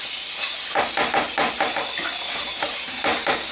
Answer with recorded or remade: recorded